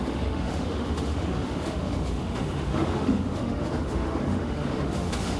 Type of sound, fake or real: fake